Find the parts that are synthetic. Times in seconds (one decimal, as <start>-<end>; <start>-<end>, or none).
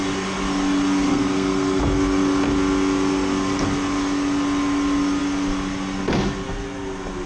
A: 1.1-1.8